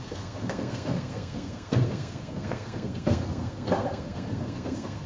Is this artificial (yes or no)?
yes